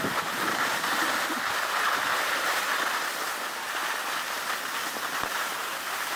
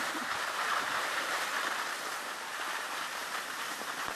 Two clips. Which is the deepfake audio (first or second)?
second